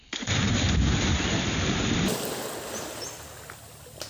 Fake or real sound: real